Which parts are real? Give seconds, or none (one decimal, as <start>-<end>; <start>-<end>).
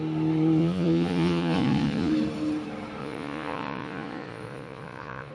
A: 0.0-0.6; 2.1-3.0